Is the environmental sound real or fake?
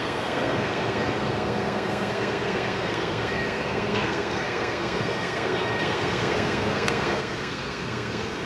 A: fake